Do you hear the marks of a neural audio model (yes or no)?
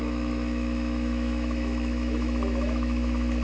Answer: yes